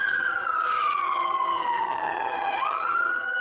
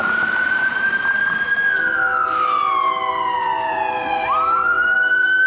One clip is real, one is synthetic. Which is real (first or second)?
second